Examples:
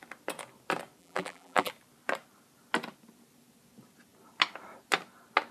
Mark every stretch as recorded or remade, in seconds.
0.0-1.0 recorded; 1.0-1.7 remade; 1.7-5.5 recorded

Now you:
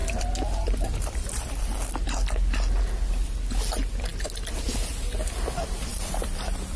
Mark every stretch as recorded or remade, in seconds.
0.0-1.6 remade; 1.6-5.9 recorded; 5.9-6.8 remade

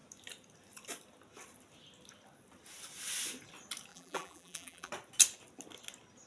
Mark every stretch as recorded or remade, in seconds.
0.0-3.9 recorded; 3.9-4.9 remade; 4.9-6.3 recorded

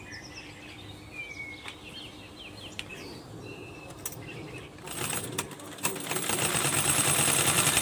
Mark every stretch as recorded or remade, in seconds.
0.0-7.8 recorded

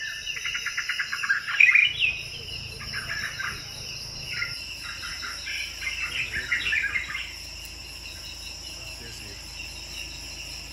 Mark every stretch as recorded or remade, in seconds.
0.0-1.8 recorded; 1.8-2.5 remade; 2.5-10.7 recorded

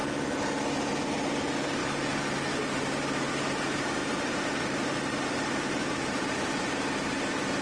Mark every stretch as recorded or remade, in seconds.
0.0-4.0 recorded; 4.0-6.6 remade; 6.6-7.6 recorded

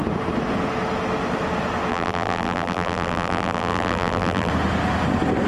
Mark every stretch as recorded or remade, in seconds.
0.0-1.9 recorded; 1.9-4.5 remade; 4.5-5.5 recorded